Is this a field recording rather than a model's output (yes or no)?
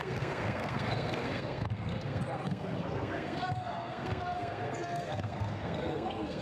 no